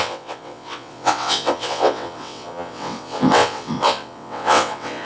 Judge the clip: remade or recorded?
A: remade